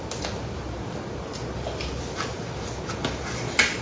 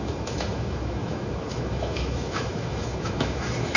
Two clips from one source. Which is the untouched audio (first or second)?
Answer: first